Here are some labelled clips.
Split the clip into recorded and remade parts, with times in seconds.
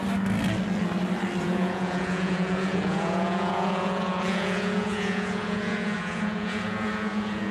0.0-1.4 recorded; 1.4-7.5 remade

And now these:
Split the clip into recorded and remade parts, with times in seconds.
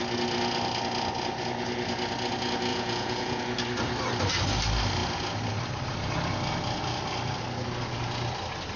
0.0-2.7 recorded; 2.7-3.4 remade; 3.4-8.8 recorded